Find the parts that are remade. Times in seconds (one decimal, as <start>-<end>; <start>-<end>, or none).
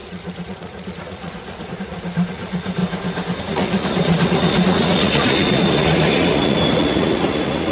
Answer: 0.0-2.8; 3.4-7.7